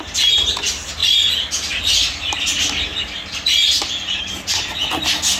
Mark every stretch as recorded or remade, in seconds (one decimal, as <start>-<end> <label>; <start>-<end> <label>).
0.0-5.4 recorded